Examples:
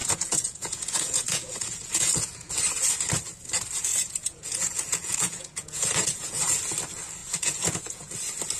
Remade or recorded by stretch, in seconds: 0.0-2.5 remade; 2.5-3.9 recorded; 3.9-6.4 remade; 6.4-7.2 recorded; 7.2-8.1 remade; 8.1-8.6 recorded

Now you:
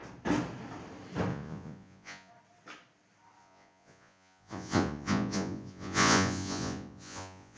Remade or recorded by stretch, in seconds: 0.0-1.3 recorded; 1.3-2.3 remade; 2.3-3.4 recorded; 3.4-7.6 remade

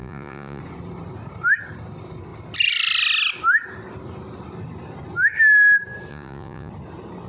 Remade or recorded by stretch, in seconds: 0.0-0.6 remade; 0.6-6.1 recorded; 6.1-6.7 remade; 6.7-7.3 recorded

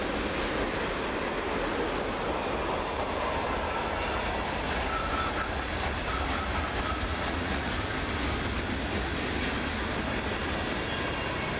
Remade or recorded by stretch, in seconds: 0.0-7.1 recorded; 7.1-7.7 remade; 7.7-11.6 recorded

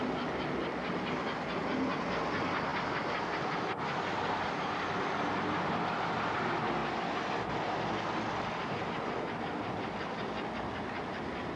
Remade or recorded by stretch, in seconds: 0.0-11.6 recorded

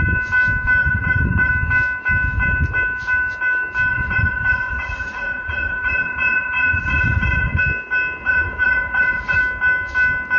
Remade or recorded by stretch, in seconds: 0.0-0.8 recorded; 0.8-1.5 remade; 1.5-3.9 recorded; 3.9-7.6 remade; 7.6-8.2 recorded; 8.2-9.4 remade; 9.4-10.4 recorded

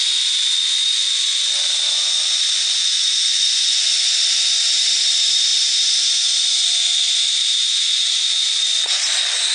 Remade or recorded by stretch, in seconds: 0.0-2.8 recorded; 2.8-4.1 remade; 4.1-9.5 recorded

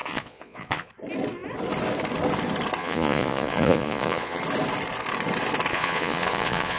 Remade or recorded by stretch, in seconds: 0.0-0.9 remade; 0.9-2.8 recorded; 2.8-4.4 remade; 4.4-5.7 recorded; 5.7-6.8 remade